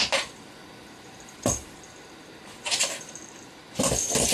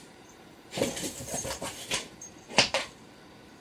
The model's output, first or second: second